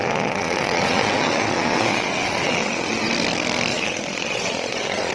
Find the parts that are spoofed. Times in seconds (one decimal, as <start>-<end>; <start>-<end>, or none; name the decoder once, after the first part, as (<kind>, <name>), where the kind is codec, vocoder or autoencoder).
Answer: 0.0-3.1 (vocoder, Vocos); 3.7-5.1